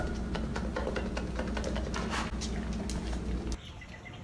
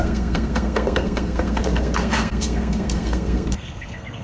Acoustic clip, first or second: first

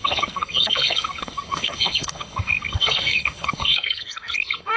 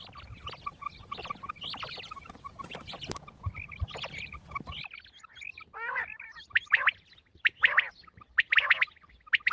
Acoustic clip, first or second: second